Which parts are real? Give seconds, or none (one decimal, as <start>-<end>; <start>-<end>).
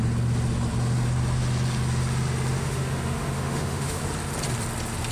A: 0.0-2.6; 4.0-5.1